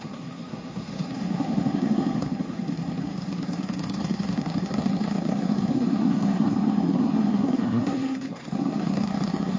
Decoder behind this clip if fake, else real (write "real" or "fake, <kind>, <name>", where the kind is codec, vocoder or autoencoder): fake, codec, SNAC